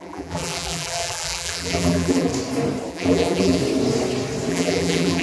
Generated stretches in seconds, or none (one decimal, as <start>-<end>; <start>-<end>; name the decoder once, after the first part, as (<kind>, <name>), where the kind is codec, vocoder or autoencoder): 0.0-2.3 (vocoder, BigVGAN v2); 2.9-3.6; 4.5-5.2